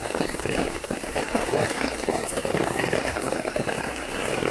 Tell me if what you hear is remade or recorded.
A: remade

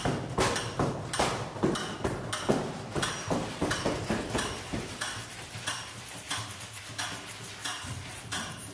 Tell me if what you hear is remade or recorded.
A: recorded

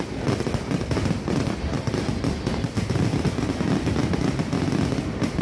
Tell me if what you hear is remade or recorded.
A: recorded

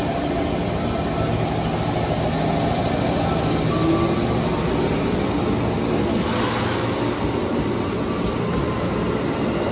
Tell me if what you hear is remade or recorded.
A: recorded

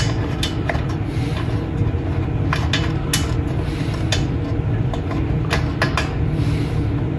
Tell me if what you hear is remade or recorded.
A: recorded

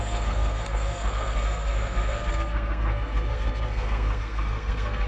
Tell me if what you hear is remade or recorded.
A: remade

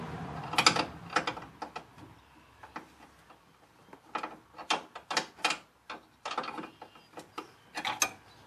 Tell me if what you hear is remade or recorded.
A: recorded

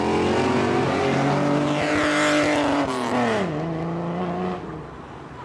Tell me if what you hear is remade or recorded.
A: recorded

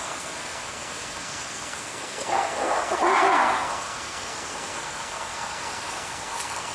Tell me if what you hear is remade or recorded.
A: remade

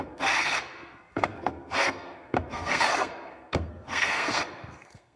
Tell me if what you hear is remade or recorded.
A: remade